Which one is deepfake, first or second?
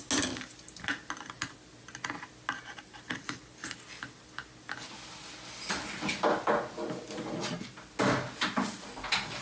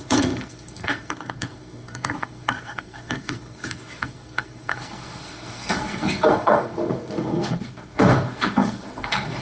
second